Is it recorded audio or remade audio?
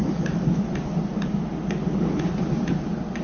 recorded